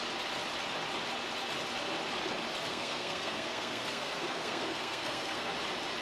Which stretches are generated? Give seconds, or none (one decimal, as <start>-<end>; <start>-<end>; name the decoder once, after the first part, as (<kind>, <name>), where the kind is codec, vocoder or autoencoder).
2.7-5.5 (codec, SNAC)